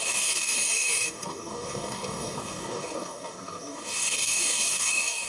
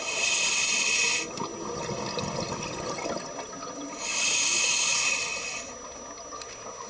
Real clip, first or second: second